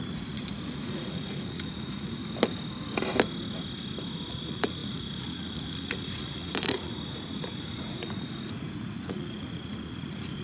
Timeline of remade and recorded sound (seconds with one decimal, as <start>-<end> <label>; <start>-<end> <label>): 0.0-2.2 remade; 2.2-4.3 recorded; 4.3-10.4 remade